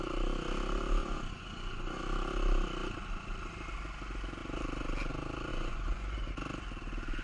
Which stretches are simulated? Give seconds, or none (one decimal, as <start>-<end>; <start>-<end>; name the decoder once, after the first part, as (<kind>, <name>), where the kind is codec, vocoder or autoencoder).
1.0-2.0 (vocoder, Vocos); 5.5-6.3